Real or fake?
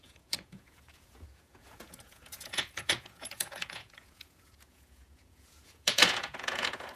fake